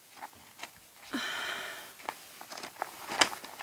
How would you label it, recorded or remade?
recorded